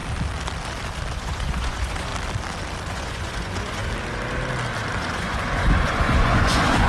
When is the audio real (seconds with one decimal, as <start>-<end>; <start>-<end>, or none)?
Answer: 0.0-1.1; 2.1-2.9; 3.8-5.0